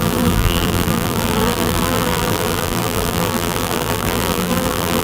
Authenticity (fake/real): fake